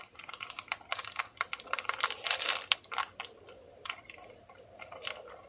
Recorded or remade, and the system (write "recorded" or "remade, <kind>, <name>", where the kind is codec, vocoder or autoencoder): remade, vocoder, BigVGAN v2